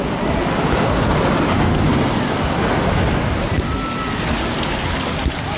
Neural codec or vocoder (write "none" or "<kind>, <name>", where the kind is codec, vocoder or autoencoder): none